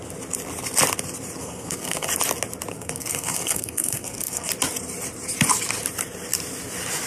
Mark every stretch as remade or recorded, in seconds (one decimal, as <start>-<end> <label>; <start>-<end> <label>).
0.0-1.4 recorded; 1.4-2.1 remade; 2.1-2.7 recorded; 2.7-4.5 remade; 4.5-7.1 recorded